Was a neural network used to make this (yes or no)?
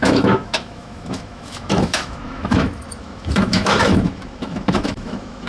yes